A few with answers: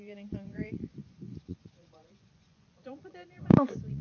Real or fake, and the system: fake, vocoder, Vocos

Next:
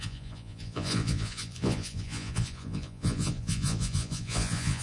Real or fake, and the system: fake, vocoder, Vocos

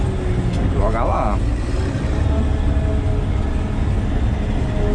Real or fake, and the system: real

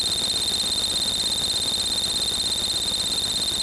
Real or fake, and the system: real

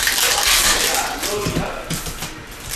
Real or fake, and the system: real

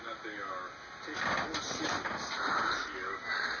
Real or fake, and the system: real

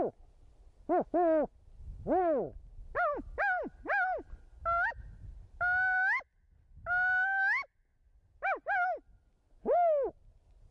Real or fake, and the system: real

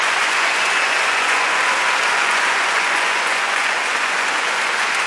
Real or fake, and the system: fake, vocoder, Vocos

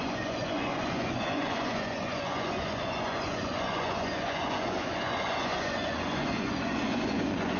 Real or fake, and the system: fake, vocoder, Vocos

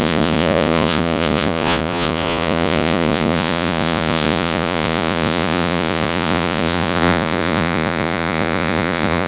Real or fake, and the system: fake, vocoder, Vocos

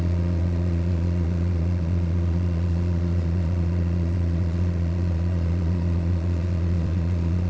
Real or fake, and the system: fake, vocoder, Vocos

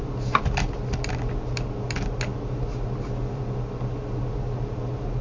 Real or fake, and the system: real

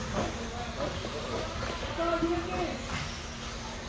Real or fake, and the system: real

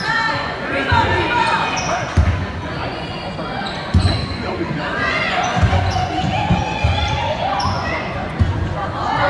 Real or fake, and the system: fake, vocoder, Vocos